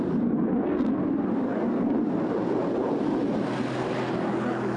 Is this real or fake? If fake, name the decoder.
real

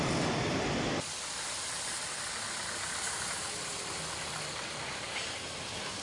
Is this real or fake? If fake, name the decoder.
real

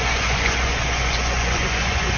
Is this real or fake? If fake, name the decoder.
fake, vocoder, Vocos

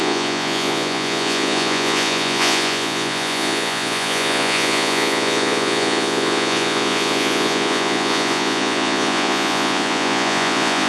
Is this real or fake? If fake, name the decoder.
fake, vocoder, Vocos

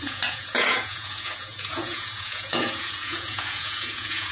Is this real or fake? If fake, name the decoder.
fake, vocoder, Vocos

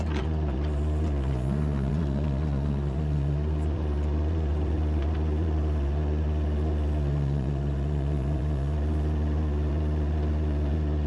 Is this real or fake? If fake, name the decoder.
fake, vocoder, Vocos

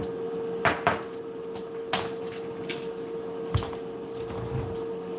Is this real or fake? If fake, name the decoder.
real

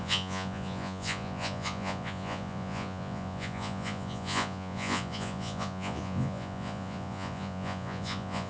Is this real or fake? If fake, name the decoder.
fake, vocoder, Vocos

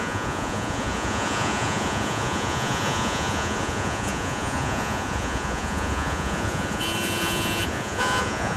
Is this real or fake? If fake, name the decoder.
fake, vocoder, Vocos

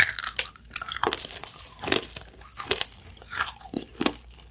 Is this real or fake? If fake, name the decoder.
real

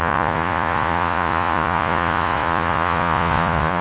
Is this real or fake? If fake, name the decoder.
fake, vocoder, Vocos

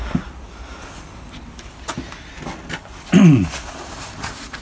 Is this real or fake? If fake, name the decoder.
real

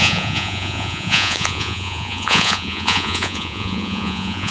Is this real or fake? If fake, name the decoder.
fake, vocoder, Vocos